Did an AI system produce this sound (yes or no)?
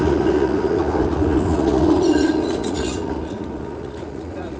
yes